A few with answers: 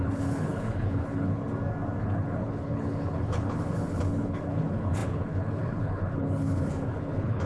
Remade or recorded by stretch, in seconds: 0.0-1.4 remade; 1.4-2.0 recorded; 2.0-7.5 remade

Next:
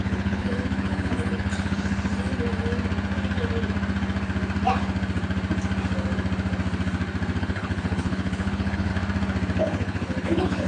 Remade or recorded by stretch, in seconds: 0.0-2.1 remade; 2.1-7.4 recorded; 7.4-8.9 remade; 8.9-9.6 recorded; 9.6-10.7 remade

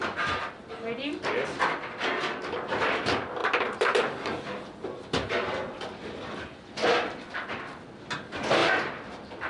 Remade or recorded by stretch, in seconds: 0.0-9.5 recorded

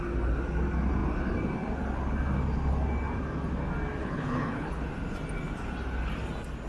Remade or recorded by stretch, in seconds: 0.0-4.0 recorded; 4.0-4.8 remade; 4.8-6.7 recorded

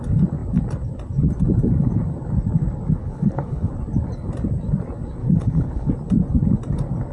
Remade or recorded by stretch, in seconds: 0.0-3.0 recorded; 3.0-3.7 remade; 3.7-5.2 recorded; 5.2-5.9 remade; 5.9-7.1 recorded

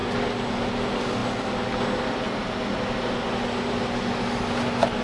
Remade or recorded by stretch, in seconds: 0.0-5.0 recorded

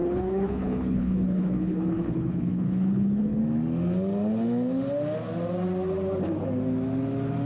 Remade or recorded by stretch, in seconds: 0.0-3.4 remade; 3.4-7.5 recorded

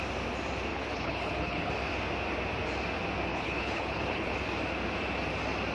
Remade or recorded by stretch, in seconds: 0.0-0.7 recorded; 0.7-1.7 remade; 1.7-3.3 recorded; 3.3-4.4 remade; 4.4-5.7 recorded